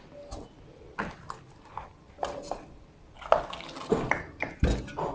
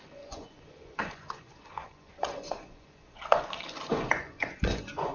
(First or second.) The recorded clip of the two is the first